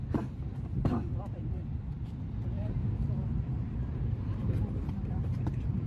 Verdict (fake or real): fake